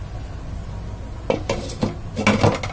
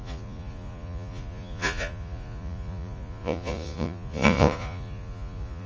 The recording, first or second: first